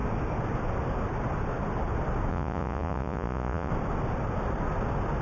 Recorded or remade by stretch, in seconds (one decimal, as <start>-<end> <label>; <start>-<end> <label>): 0.0-2.3 recorded; 2.3-3.7 remade; 3.7-5.2 recorded